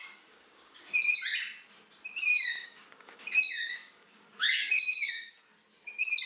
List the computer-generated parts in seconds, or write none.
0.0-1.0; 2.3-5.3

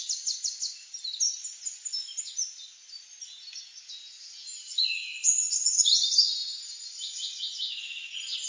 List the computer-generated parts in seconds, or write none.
none

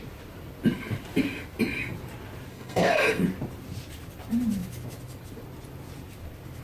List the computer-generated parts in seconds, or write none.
2.5-3.2

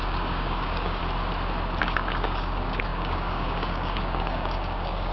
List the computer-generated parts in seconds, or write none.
0.0-1.0; 1.8-5.1

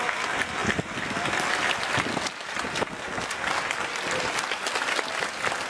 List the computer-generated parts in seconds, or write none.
none

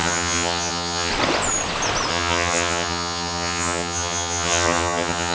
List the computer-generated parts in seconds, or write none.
0.0-1.1; 2.1-5.3

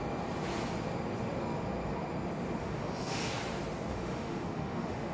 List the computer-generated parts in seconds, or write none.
2.6-3.3; 3.9-5.1